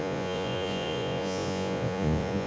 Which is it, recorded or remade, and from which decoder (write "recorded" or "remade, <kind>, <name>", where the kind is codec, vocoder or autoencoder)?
remade, vocoder, Vocos